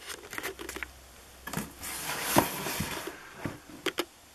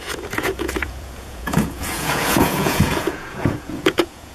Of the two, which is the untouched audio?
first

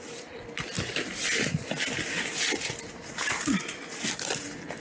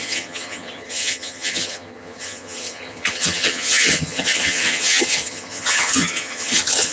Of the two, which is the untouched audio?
first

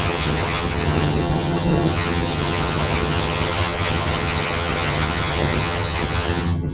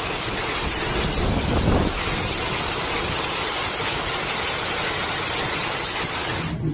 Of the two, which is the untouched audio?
second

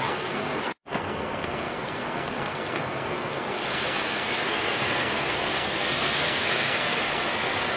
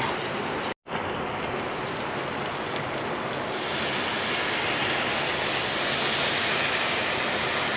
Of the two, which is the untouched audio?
second